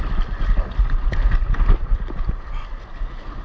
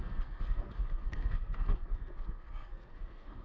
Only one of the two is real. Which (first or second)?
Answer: first